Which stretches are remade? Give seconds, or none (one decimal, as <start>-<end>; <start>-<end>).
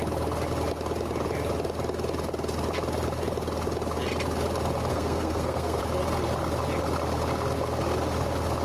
4.9-5.8